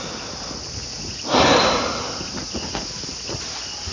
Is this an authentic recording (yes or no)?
yes